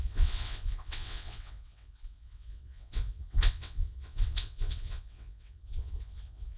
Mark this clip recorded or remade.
remade